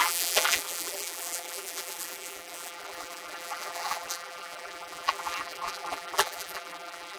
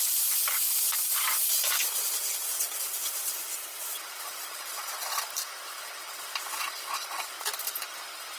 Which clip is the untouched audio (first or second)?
second